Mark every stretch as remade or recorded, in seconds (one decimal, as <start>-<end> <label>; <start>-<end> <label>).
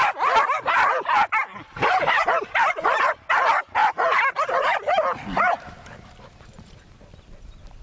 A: 0.0-1.5 recorded; 1.5-2.2 remade; 2.2-7.8 recorded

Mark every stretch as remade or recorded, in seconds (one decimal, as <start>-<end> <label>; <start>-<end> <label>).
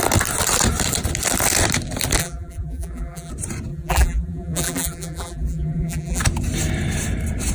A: 0.0-2.2 recorded; 2.2-3.3 remade; 3.3-3.7 recorded; 3.7-6.2 remade; 6.2-7.5 recorded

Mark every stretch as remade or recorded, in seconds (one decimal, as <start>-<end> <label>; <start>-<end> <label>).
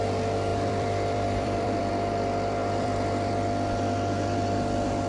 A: 0.0-0.5 recorded; 0.5-1.9 remade; 1.9-2.6 recorded; 2.6-3.3 remade; 3.3-5.1 recorded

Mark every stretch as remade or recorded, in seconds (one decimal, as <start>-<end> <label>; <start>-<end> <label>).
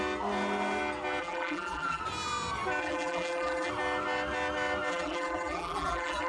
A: 0.0-1.2 recorded; 1.2-2.0 remade; 2.0-2.8 recorded; 2.8-3.7 remade; 3.7-4.9 recorded; 4.9-6.3 remade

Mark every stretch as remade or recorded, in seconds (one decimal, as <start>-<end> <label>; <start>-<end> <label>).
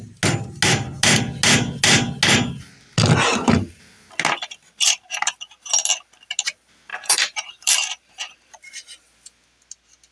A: 0.0-6.9 recorded; 6.9-8.7 remade; 8.7-10.1 recorded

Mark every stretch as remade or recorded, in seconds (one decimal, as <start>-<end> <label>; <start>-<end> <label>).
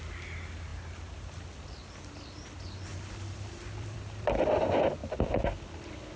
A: 0.0-2.9 recorded; 2.9-4.3 remade; 4.3-6.2 recorded